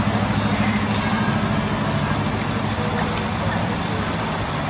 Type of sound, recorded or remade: recorded